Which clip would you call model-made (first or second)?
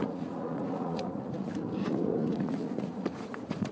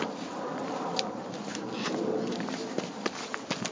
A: first